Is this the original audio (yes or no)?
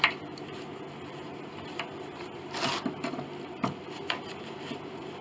yes